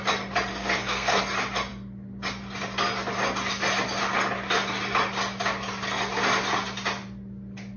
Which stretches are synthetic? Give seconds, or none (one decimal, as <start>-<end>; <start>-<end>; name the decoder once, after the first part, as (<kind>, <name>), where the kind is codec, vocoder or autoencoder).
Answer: 0.5-1.2 (codec, SNAC)